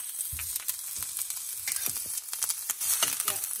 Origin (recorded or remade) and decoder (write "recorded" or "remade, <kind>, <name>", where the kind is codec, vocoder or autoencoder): recorded